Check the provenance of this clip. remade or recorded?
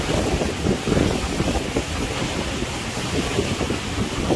recorded